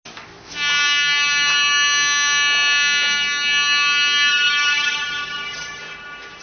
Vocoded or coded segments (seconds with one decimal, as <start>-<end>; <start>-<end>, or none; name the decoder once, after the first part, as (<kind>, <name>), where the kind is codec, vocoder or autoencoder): 4.3-5.8 (autoencoder, DAC-VAE)